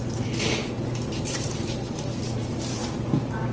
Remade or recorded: recorded